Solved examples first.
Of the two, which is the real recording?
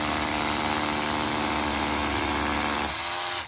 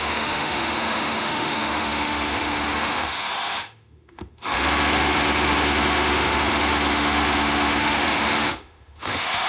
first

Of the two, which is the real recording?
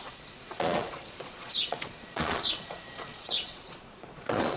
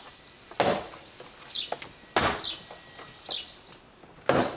second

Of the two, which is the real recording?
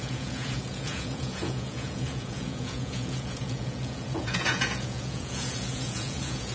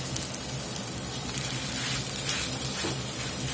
second